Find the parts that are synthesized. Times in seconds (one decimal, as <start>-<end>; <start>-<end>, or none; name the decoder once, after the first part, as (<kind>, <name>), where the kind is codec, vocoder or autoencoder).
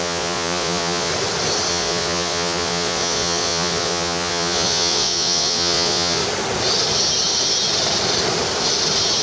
0.0-1.1 (vocoder, Vocos); 1.7-6.2